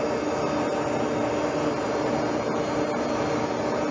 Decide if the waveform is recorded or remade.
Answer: recorded